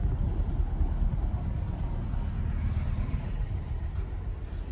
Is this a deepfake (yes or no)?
no